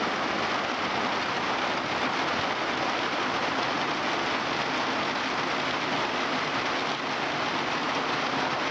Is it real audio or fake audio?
real